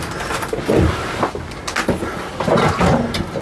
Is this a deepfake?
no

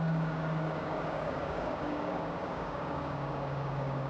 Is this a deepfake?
yes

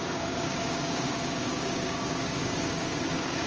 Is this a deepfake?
yes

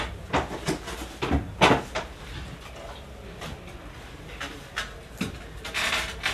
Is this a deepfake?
no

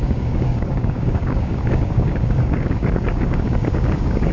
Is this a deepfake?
yes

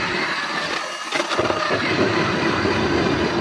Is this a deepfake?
no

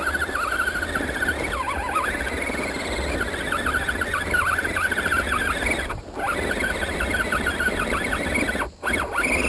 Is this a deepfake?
no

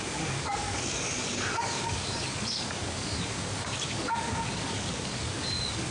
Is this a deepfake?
yes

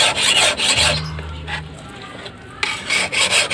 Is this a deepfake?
no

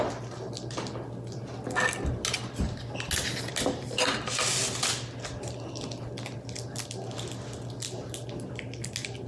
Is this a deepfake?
no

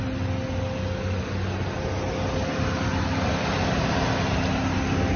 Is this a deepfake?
no